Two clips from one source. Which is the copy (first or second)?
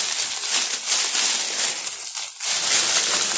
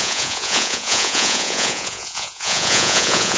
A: second